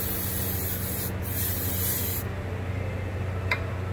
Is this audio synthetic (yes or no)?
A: no